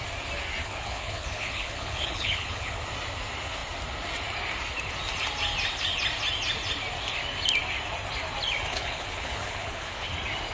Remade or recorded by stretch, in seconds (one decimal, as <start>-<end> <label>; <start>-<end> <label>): 0.0-0.6 recorded; 0.6-2.8 remade; 2.8-8.7 recorded; 8.7-10.1 remade; 10.1-10.5 recorded